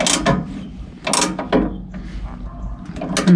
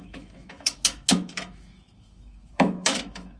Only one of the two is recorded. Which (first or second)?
first